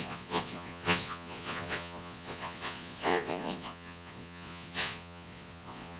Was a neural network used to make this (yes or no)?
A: yes